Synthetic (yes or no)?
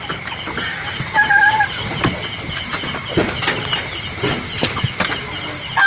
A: no